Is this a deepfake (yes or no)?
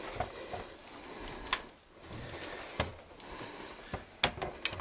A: no